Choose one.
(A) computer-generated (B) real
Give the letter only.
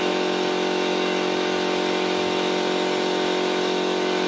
B